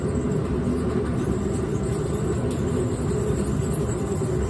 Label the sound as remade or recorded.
recorded